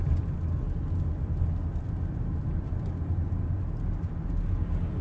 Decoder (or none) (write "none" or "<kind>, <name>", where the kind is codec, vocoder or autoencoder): none